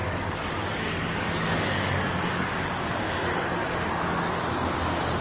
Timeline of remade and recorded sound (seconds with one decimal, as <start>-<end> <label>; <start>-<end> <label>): 0.0-3.1 remade; 3.1-3.6 recorded; 3.6-4.5 remade; 4.5-5.2 recorded